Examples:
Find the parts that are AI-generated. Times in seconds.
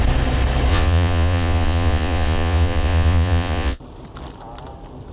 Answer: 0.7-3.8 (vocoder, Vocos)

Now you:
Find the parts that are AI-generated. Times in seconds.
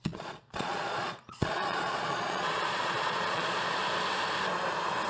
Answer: 0.0-3.8 (vocoder, Vocos)